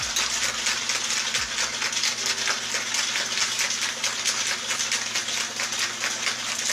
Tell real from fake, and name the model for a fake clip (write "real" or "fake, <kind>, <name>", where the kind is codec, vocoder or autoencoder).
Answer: real